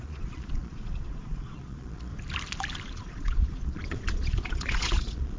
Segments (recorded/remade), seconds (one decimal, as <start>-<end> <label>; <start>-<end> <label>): 0.0-2.1 remade; 2.1-2.9 recorded; 2.9-5.4 remade